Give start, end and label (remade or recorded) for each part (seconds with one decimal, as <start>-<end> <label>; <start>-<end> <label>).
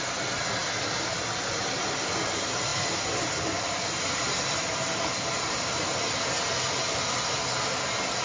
0.0-8.2 recorded